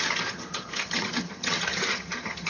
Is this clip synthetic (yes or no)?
yes